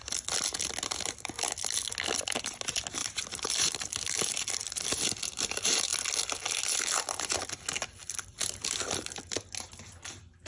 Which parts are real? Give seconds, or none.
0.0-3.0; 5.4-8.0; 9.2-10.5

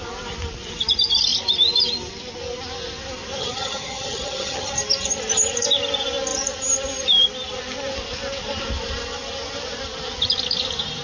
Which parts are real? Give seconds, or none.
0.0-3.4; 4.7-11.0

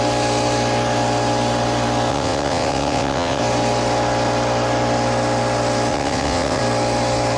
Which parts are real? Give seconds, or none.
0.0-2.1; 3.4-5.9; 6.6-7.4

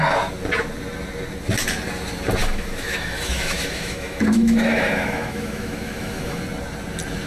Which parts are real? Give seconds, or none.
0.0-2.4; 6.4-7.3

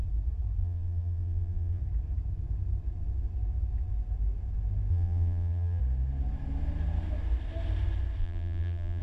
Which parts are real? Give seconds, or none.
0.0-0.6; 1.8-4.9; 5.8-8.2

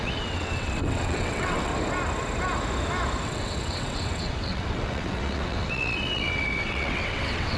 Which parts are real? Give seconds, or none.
1.7-3.2

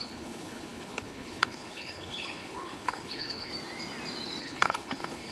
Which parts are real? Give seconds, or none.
3.5-4.4

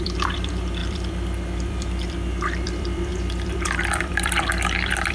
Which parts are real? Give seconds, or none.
none